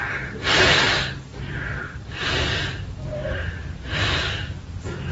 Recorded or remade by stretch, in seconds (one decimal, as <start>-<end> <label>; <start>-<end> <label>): 0.0-5.1 recorded